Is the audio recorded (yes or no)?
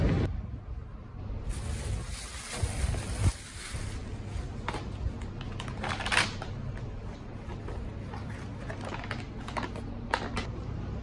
yes